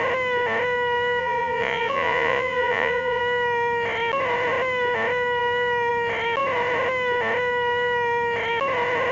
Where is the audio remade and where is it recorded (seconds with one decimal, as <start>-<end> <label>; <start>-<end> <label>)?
0.0-1.2 recorded; 1.2-3.2 remade; 3.2-9.1 recorded